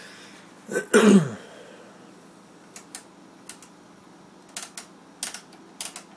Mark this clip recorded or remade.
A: recorded